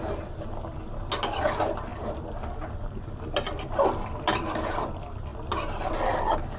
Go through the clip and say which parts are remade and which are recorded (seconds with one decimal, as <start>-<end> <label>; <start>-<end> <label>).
0.0-6.6 recorded